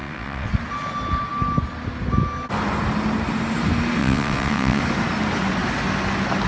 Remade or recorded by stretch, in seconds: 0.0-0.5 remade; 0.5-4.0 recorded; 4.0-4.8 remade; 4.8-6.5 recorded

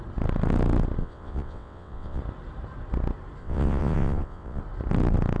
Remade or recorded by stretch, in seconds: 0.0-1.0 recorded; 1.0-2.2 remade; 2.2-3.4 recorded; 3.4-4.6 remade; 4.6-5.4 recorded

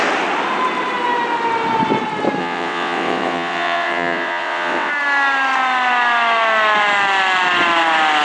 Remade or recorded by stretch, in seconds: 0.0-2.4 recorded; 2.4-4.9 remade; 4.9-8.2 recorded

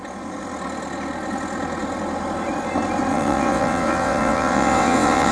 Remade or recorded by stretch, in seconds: 0.0-3.1 recorded; 3.1-5.3 remade